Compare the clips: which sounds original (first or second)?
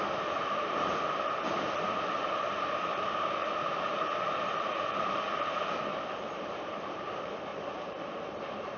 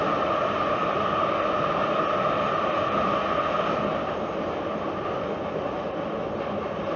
second